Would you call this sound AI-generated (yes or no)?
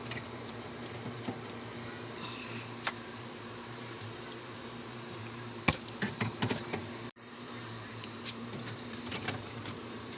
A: yes